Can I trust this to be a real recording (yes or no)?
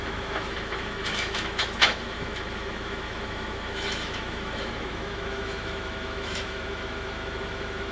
no